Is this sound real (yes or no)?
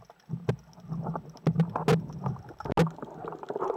yes